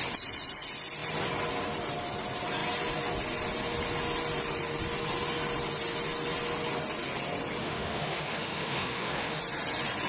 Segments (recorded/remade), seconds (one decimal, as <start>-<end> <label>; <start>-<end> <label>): 0.0-7.6 recorded; 7.6-9.4 remade; 9.4-10.1 recorded